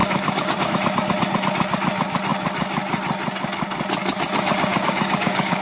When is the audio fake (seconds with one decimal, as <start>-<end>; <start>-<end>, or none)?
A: 0.0-0.7; 4.7-5.6